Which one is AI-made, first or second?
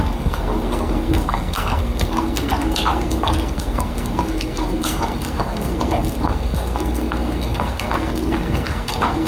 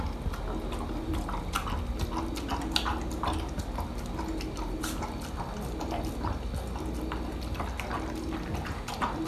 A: first